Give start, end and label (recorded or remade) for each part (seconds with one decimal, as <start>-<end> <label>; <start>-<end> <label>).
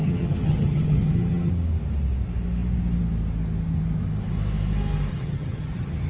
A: 0.0-1.5 remade; 1.5-5.1 recorded; 5.1-6.1 remade